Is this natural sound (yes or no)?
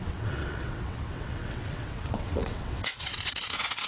no